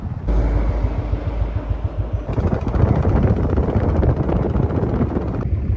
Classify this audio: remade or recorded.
recorded